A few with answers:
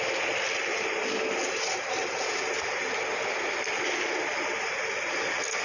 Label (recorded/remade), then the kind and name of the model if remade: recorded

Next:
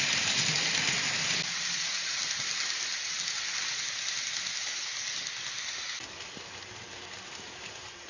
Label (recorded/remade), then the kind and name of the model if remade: recorded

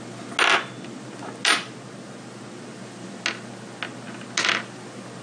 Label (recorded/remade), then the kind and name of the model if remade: recorded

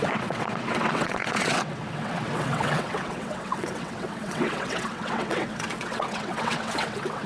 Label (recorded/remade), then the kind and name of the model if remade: remade, vocoder, WaveNeXt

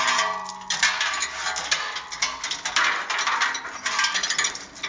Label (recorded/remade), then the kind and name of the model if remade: recorded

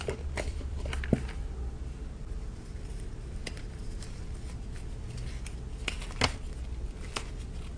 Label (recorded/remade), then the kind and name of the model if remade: recorded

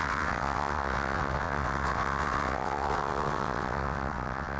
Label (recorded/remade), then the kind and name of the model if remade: remade, vocoder, WaveNeXt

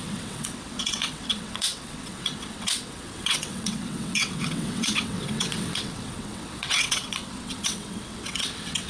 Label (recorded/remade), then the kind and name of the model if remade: remade, vocoder, WaveNeXt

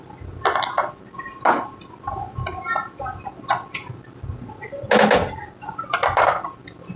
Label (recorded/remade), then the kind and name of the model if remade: recorded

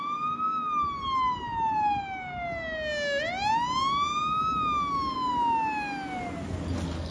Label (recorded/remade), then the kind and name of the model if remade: recorded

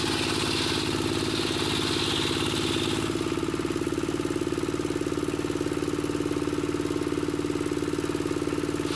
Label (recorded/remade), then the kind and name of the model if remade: recorded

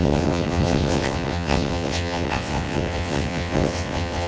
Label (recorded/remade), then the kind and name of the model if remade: remade, vocoder, WaveNeXt